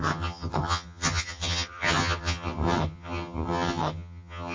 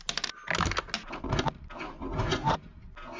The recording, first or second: second